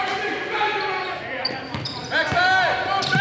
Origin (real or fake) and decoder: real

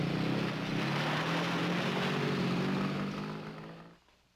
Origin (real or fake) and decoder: real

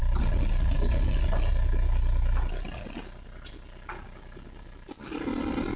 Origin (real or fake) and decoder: real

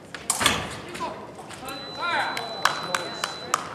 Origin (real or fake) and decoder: real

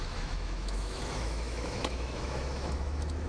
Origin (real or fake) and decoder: fake, autoencoder, DAC-VAE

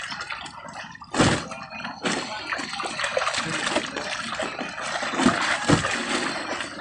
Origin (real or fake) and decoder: real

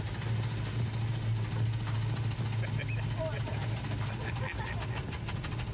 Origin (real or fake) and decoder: real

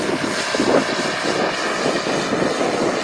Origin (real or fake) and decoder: real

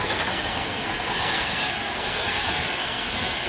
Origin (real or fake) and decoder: fake, codec, SNAC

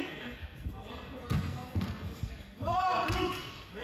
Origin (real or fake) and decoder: fake, codec, SNAC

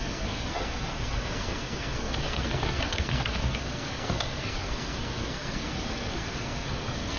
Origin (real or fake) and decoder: fake, codec, SNAC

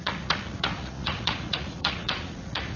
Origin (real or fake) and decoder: fake, vocoder, Vocos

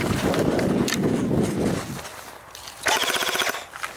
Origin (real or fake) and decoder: real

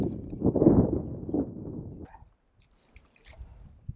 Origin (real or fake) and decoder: real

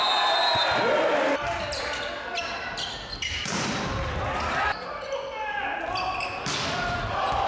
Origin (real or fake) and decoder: real